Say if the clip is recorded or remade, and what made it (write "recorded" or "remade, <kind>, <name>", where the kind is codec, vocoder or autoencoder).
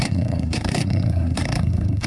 remade, codec, SNAC